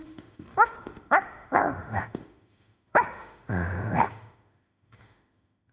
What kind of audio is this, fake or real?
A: fake